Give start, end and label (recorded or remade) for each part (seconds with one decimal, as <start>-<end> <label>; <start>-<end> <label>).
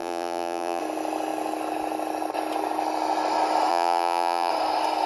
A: 0.0-0.8 remade; 0.8-3.7 recorded; 3.7-4.5 remade; 4.5-5.1 recorded